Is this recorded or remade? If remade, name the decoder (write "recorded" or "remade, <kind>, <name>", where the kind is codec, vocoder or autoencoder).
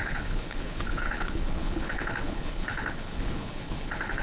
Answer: remade, codec, HILCodec